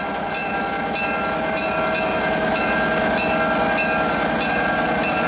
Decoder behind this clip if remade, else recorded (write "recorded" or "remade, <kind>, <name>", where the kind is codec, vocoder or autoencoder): recorded